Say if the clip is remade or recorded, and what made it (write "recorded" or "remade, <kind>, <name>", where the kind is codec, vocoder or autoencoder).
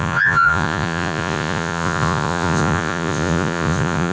remade, vocoder, Vocos